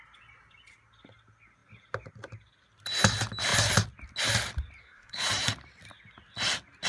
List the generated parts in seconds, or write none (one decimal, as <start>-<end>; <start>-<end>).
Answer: 4.8-5.3